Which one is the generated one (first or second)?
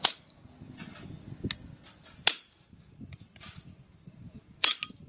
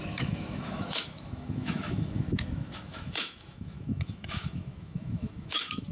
second